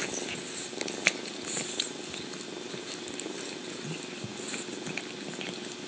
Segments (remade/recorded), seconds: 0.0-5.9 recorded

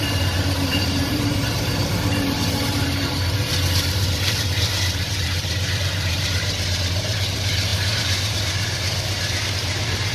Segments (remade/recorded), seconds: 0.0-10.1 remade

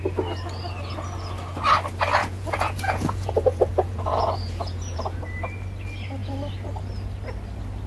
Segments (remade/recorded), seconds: 0.0-2.2 recorded; 2.2-5.2 remade; 5.2-7.9 recorded

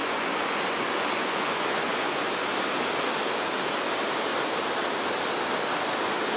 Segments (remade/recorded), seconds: 0.0-2.3 remade; 2.3-6.4 recorded

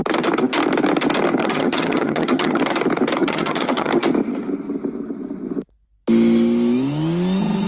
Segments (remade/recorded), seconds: 0.0-1.4 recorded; 1.4-2.6 remade; 2.6-3.2 recorded; 3.2-3.9 remade; 3.9-7.7 recorded

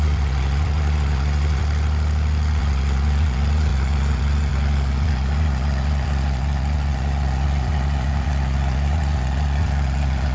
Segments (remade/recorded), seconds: 0.0-1.6 remade; 1.6-2.6 recorded; 2.6-10.3 remade